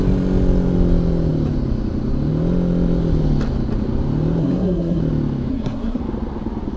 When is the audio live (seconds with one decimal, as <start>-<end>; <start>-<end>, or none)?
0.0-4.4; 5.0-5.5; 6.0-6.8